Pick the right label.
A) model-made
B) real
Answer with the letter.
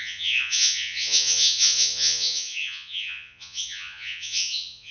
A